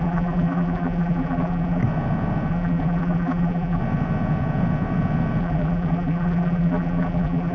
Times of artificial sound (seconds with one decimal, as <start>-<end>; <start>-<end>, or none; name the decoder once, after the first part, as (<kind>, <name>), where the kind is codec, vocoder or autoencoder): 0.0-1.8 (vocoder, BigVGAN v2); 2.5-3.8; 5.4-7.5